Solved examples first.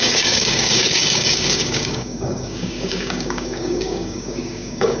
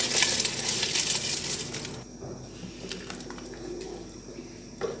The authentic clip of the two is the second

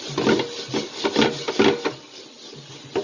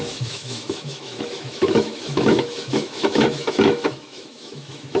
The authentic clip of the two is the first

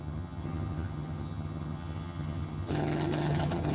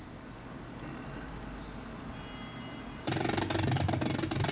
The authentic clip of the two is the second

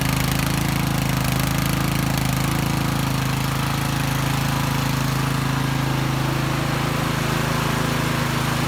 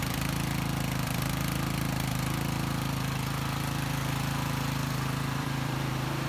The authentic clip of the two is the first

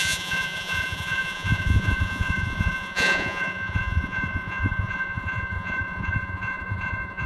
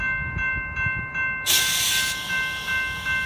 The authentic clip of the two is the second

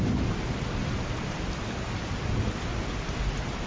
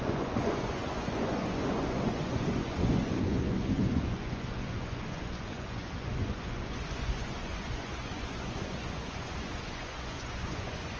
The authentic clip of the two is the first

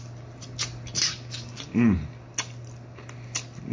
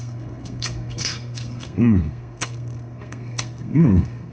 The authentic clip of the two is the first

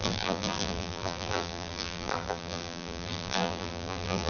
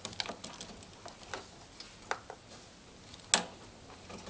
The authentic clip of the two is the second